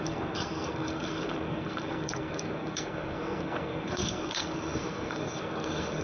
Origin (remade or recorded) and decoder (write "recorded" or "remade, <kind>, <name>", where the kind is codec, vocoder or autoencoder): remade, codec, SNAC